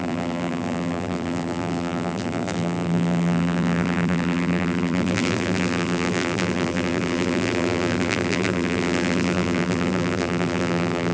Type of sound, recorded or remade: remade